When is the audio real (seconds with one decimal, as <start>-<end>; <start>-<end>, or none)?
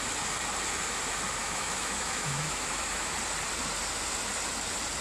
0.0-1.4; 3.1-5.0